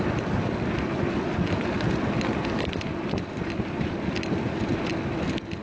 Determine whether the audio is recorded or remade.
remade